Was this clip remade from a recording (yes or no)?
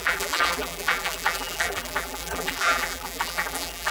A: yes